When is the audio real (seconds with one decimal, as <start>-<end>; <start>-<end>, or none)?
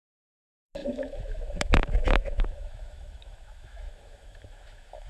none